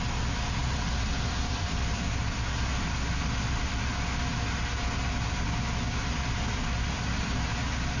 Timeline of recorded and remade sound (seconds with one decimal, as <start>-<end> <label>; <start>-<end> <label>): 0.0-0.6 recorded; 0.6-2.2 remade; 2.2-8.0 recorded